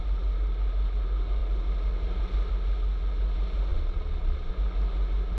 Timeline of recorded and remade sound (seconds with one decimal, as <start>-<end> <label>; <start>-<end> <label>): 0.0-3.7 recorded; 3.7-4.5 remade; 4.5-5.4 recorded